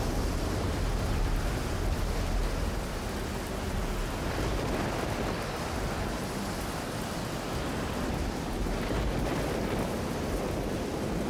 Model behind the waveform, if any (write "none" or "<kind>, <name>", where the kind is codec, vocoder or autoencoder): none